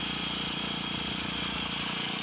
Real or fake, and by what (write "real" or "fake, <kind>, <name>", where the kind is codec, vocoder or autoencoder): real